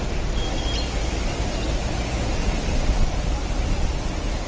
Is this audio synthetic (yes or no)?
no